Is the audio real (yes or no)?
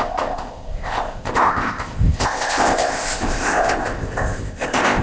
no